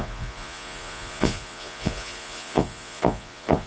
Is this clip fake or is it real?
fake